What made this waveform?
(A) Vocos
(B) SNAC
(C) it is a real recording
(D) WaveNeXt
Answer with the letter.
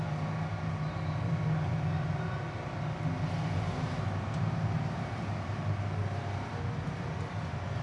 C